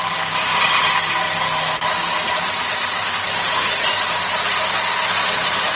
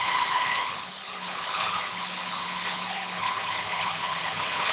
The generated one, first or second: second